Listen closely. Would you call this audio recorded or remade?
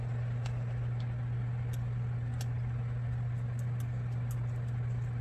recorded